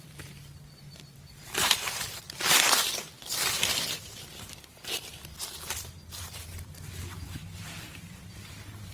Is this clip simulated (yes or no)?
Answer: yes